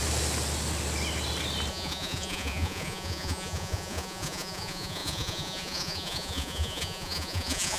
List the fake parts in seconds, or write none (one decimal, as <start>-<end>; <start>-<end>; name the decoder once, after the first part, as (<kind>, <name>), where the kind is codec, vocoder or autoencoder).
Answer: 1.7-7.8 (vocoder, Vocos)